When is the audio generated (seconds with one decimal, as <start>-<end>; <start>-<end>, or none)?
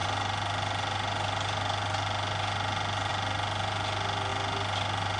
none